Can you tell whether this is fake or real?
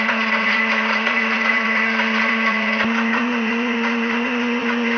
fake